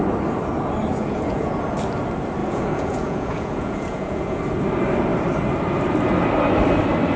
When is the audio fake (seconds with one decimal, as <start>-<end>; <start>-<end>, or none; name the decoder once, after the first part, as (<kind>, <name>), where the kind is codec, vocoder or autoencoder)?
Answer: 0.9-1.5 (vocoder, Vocos); 2.4-4.4